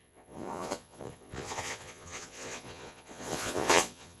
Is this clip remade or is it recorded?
remade